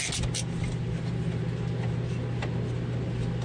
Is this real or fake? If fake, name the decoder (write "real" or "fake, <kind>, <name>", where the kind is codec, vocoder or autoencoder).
real